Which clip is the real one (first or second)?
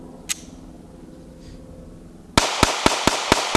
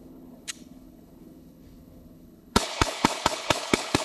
first